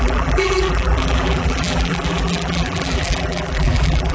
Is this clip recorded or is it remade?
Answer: remade